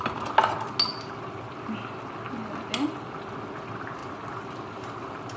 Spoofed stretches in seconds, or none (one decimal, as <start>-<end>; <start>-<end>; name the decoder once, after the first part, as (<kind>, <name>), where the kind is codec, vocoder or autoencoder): none